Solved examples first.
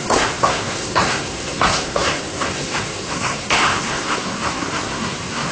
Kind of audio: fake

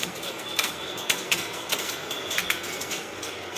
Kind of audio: fake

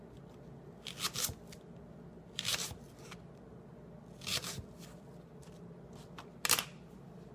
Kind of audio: real